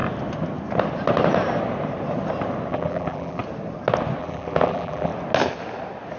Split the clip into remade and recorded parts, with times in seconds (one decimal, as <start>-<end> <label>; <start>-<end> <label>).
0.0-2.7 recorded; 2.7-3.4 remade; 3.4-4.2 recorded; 4.2-5.1 remade; 5.1-6.2 recorded